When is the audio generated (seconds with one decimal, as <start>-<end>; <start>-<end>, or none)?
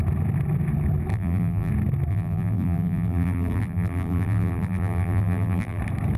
1.1-1.7; 2.1-5.8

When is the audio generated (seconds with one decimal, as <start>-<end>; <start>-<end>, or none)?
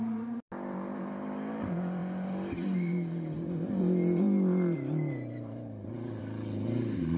none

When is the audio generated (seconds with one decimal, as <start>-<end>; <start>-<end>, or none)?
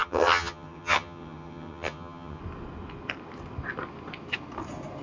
0.0-2.4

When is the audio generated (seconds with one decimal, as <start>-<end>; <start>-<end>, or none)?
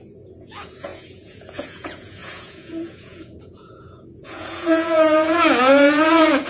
0.0-6.5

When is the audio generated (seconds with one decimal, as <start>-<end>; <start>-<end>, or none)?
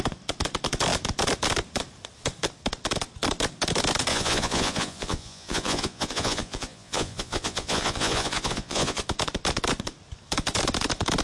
4.1-9.0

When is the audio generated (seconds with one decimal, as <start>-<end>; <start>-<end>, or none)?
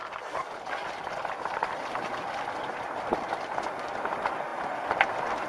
none